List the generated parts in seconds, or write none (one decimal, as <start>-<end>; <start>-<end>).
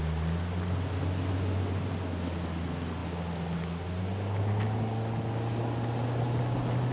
none